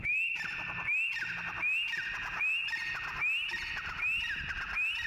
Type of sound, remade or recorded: recorded